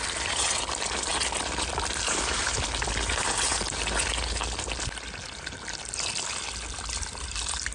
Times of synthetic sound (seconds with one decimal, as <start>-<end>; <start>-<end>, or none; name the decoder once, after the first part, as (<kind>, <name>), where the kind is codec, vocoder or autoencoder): none